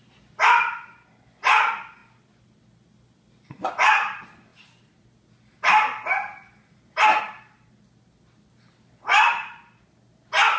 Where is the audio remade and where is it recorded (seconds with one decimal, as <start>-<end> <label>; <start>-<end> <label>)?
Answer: 0.0-10.6 recorded